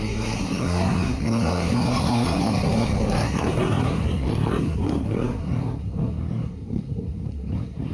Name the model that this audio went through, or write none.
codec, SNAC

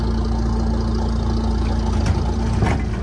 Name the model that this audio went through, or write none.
none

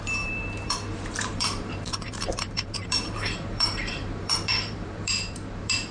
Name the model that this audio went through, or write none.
vocoder, BigVGAN v2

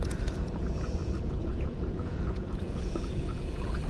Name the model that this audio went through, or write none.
vocoder, Vocos